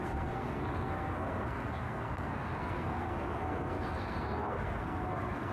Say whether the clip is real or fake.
fake